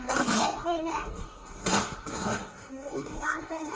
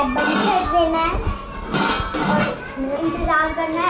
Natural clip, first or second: second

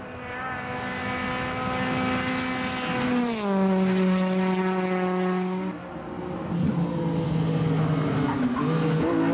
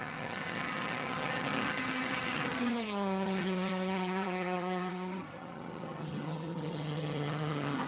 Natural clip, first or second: first